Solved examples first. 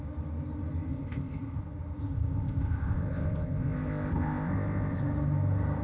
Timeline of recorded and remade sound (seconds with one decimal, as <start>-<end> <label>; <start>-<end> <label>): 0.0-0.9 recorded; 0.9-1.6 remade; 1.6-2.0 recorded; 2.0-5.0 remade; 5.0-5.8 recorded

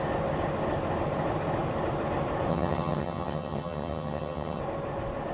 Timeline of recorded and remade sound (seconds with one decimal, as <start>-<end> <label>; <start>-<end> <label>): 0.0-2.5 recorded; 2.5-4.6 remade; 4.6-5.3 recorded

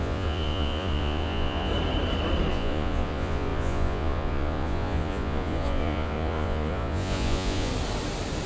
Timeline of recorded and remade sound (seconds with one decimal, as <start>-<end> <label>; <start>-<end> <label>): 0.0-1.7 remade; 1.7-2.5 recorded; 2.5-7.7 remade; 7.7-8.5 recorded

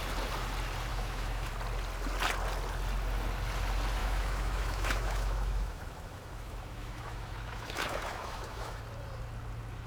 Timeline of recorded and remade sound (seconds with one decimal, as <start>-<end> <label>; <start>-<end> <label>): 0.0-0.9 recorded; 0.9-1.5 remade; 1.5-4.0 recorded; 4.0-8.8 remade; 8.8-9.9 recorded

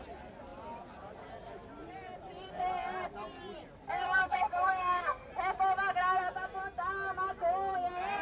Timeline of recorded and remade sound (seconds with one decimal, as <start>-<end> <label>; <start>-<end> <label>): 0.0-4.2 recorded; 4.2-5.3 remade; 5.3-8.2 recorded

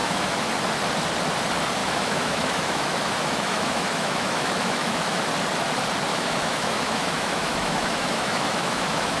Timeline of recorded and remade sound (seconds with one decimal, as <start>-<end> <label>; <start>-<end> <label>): 0.0-0.5 remade; 0.5-1.8 recorded; 1.8-5.3 remade; 5.3-6.1 recorded; 6.1-9.2 remade